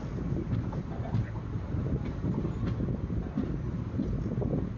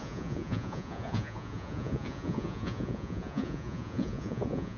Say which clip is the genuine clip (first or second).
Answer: first